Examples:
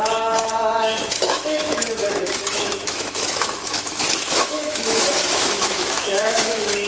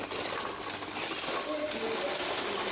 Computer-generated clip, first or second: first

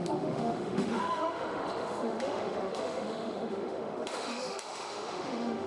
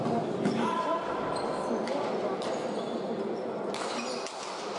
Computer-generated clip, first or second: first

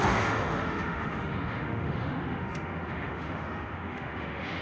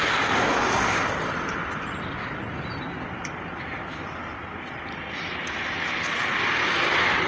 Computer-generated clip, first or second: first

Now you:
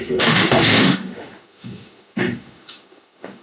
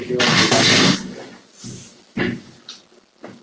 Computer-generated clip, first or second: first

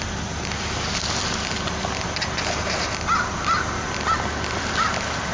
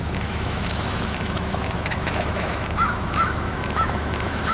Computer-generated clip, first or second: second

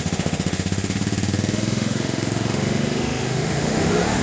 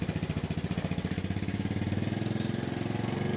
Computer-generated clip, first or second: first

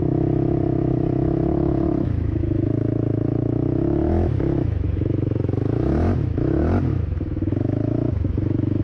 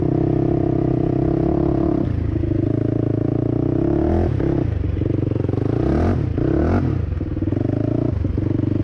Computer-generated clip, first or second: first